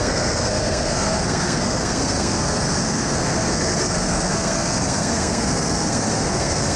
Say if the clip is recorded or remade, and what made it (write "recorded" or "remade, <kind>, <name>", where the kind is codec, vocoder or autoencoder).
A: remade, codec, SNAC